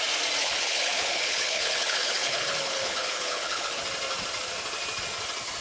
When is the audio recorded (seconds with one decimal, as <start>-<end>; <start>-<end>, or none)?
0.0-0.4; 3.8-5.6